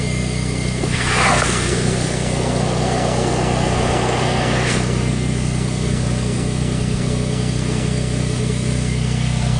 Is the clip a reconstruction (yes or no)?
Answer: yes